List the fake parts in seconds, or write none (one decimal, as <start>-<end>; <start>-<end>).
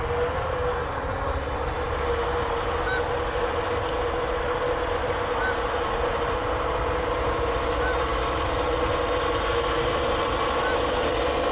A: none